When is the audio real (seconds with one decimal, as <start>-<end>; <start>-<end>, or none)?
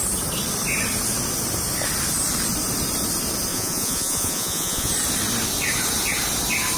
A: 0.0-3.5; 4.9-6.8